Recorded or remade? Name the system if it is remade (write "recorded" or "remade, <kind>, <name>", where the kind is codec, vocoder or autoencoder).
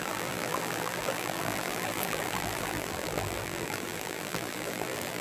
remade, vocoder, BigVGAN v2